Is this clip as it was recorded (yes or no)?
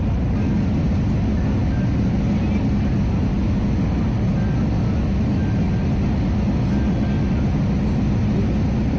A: yes